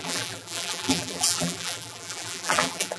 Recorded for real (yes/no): no